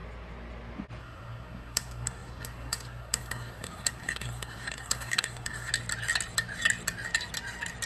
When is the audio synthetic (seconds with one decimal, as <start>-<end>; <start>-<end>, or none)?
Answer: 1.0-5.7